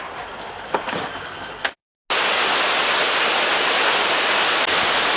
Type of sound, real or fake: real